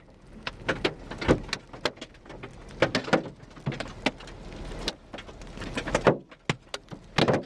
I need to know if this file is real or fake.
real